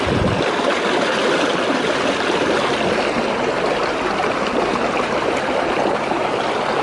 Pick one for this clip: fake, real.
real